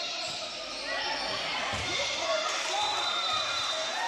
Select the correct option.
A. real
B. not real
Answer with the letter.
A